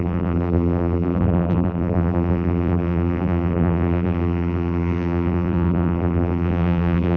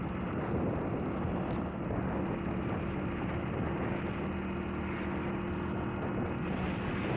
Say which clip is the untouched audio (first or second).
second